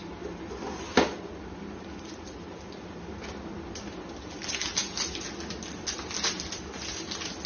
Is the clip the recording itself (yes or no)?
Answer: yes